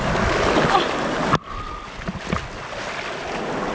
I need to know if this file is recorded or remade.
recorded